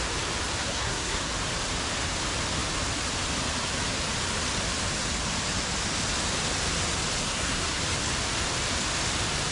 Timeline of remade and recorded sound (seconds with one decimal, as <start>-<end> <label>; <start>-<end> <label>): 0.0-0.6 recorded; 0.6-1.3 remade; 1.3-7.2 recorded; 7.2-7.8 remade; 7.8-9.5 recorded